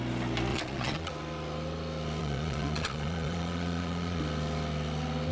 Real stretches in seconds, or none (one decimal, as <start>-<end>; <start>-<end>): 0.0-0.5; 1.1-2.2; 4.2-5.3